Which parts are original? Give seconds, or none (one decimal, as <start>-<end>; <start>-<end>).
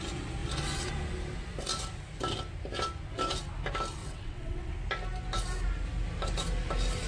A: 0.0-4.0; 4.7-7.1